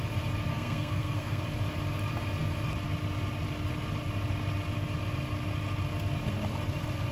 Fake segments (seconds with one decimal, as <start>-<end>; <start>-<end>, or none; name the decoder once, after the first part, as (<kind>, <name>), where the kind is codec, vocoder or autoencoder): 0.5-1.4 (codec, SNAC)